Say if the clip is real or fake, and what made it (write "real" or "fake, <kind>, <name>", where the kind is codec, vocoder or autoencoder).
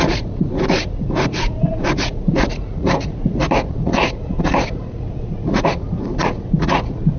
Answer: fake, vocoder, Vocos